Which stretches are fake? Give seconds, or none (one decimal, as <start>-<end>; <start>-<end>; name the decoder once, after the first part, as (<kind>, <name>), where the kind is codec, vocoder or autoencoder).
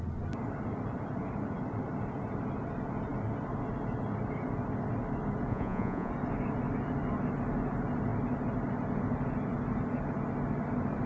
5.5-6.1 (vocoder, Vocos)